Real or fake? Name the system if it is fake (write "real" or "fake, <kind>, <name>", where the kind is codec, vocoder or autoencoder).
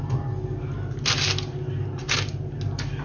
real